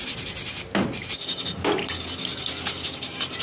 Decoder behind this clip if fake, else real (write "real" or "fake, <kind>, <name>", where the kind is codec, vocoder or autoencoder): real